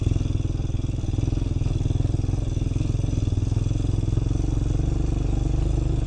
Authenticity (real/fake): real